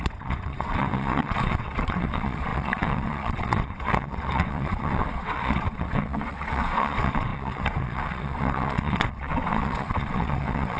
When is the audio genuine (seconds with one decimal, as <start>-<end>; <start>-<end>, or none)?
none